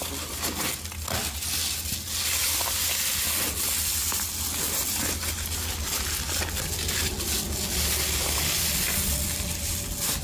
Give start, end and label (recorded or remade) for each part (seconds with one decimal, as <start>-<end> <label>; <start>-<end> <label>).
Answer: 0.0-10.2 recorded